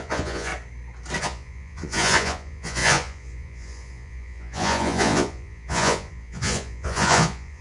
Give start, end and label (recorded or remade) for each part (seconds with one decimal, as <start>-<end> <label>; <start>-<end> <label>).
0.0-0.5 remade; 0.5-1.2 recorded; 1.2-7.6 remade